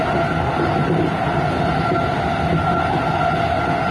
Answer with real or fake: real